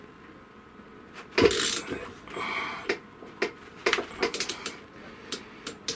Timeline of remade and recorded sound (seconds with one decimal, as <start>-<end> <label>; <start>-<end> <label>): 0.0-6.0 recorded